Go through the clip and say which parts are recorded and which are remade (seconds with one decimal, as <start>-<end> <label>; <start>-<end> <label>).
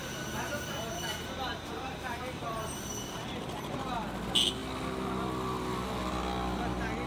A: 0.0-1.5 recorded; 1.5-3.9 remade; 3.9-7.1 recorded